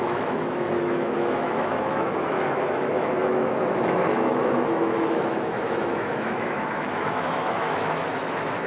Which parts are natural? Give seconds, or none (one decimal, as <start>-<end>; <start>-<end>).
none